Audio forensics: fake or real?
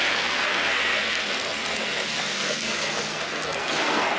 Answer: fake